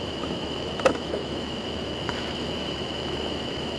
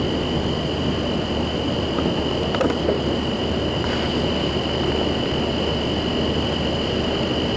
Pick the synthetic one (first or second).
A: first